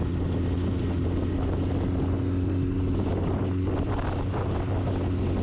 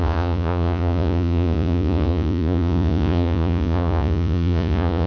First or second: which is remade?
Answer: second